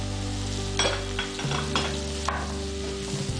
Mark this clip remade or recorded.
recorded